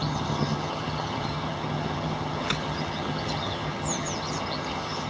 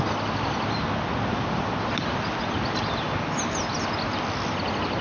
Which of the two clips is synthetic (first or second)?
first